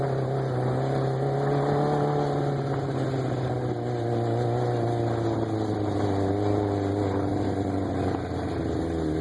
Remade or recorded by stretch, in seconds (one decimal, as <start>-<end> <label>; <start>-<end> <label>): 0.0-9.2 recorded